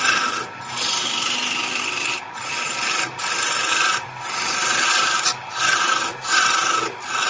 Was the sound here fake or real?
real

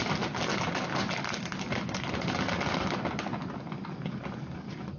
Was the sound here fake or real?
real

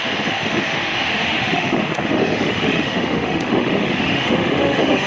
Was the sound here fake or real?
fake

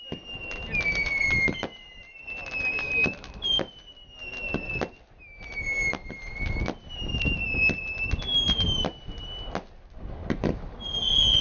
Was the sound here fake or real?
real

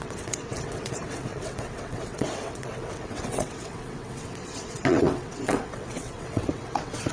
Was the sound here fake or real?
fake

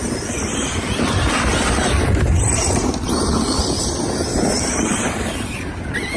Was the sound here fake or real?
real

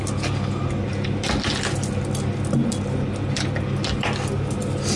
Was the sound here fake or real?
real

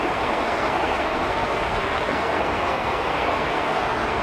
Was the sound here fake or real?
fake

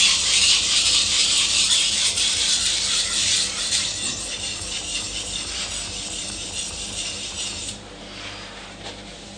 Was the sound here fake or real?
fake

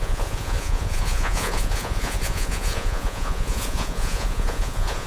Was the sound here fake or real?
fake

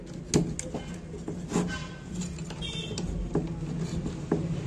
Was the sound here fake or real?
real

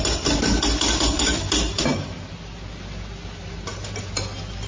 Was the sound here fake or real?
real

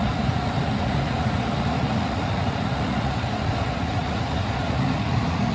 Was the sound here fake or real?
fake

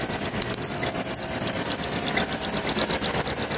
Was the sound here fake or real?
real